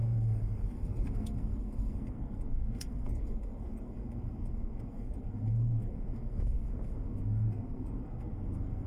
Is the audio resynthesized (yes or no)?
yes